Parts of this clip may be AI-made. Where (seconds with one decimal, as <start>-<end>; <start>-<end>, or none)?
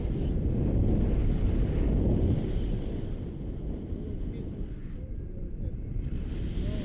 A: none